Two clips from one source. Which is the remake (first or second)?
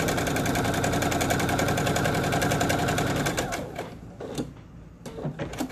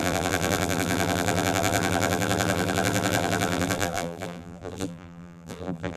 second